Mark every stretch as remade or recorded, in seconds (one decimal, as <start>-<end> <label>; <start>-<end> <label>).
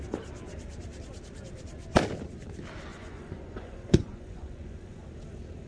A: 0.0-2.9 recorded; 2.9-5.1 remade; 5.1-5.7 recorded